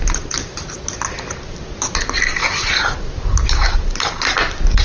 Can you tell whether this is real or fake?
real